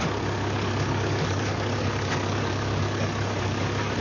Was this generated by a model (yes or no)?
yes